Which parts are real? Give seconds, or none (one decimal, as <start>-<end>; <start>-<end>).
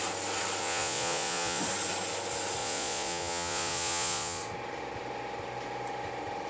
0.0-0.6; 1.6-2.6; 4.4-6.5